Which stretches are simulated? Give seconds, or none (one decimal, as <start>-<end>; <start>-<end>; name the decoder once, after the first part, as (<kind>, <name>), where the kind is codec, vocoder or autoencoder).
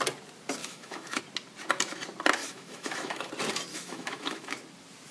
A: 0.6-1.2 (autoencoder, DAC-VAE); 2.4-3.3; 3.7-4.5